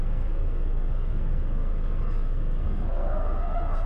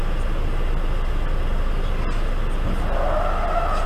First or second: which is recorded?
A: second